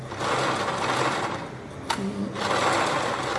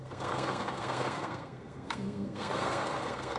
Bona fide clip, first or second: first